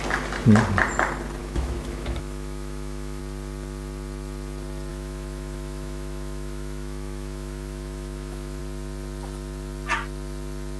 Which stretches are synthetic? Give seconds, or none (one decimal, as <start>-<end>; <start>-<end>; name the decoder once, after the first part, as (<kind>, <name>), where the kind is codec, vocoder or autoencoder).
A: 1.4-3.2 (autoencoder, DAC-VAE); 4.9-8.6